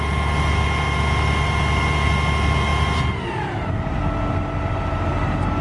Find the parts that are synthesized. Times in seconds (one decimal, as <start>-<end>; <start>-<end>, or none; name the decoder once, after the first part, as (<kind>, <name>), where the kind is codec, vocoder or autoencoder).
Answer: none